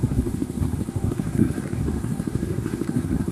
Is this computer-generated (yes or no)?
yes